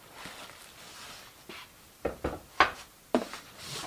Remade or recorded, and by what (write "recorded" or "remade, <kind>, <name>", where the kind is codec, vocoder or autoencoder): recorded